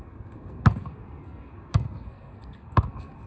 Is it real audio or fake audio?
fake